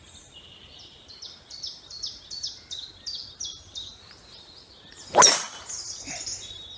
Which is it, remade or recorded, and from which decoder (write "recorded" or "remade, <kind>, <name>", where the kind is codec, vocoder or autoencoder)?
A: recorded